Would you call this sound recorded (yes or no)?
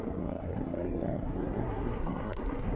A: no